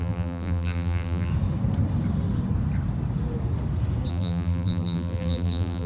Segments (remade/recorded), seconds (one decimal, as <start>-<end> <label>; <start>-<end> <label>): 0.0-1.3 remade; 1.3-4.1 recorded; 4.1-5.9 remade